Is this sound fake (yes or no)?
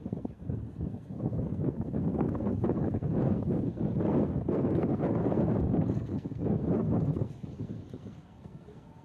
yes